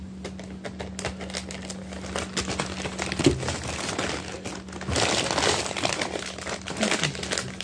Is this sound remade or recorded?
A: recorded